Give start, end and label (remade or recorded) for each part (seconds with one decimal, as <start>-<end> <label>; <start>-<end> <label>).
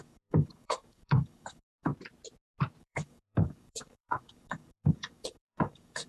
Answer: 0.0-1.9 remade; 1.9-2.8 recorded; 2.8-6.1 remade